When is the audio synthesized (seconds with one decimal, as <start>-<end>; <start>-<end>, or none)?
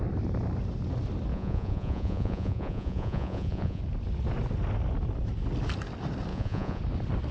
1.3-3.8; 6.3-6.8